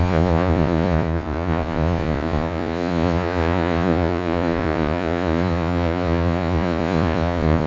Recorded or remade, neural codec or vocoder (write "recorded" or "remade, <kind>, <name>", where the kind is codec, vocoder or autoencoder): remade, vocoder, Vocos